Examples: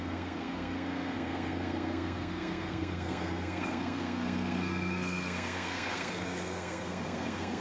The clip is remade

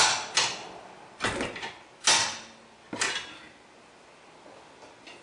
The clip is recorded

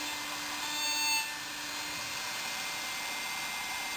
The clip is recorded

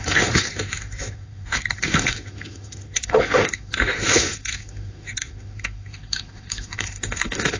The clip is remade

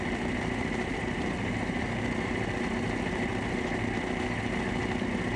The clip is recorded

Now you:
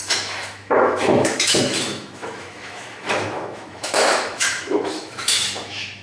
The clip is remade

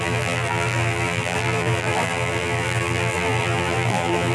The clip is remade